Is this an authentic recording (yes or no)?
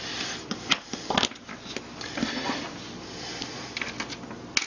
yes